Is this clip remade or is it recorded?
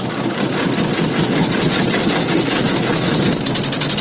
recorded